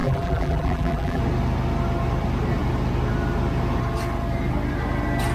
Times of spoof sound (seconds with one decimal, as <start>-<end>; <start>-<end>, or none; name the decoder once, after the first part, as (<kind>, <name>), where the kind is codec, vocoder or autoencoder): 0.0-1.2 (vocoder, BigVGAN v2)